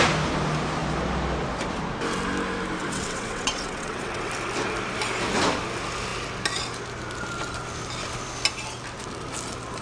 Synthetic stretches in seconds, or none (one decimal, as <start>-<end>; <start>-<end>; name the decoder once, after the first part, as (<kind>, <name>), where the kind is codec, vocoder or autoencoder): 2.8-4.3 (vocoder, WaveNeXt)